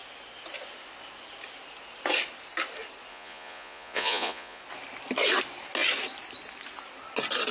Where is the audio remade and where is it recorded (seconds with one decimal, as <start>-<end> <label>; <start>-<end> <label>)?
0.0-3.1 recorded; 3.1-4.6 remade; 4.6-7.5 recorded